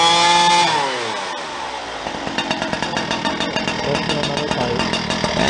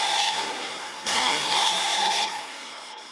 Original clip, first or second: first